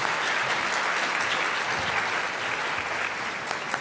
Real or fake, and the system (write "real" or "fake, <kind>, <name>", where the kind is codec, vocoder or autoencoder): real